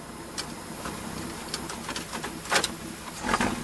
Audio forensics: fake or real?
real